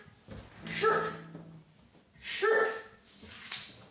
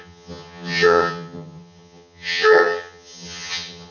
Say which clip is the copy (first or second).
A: second